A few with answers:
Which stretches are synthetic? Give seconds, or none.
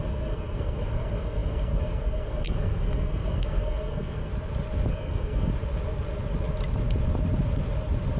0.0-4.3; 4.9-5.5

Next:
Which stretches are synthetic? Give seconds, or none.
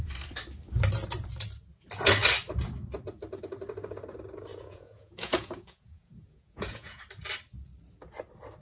4.5-7.0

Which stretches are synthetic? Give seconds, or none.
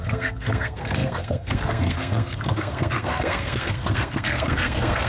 0.0-5.1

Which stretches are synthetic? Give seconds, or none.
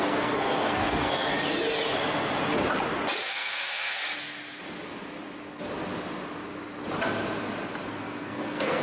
0.0-1.3; 3.3-4.0; 7.9-8.8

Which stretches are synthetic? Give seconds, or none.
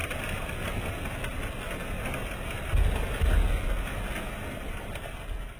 none